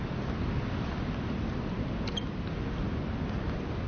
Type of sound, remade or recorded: recorded